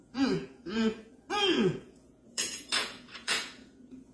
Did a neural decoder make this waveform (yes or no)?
yes